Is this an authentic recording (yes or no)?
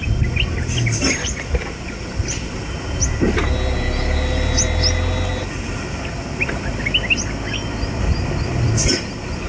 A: yes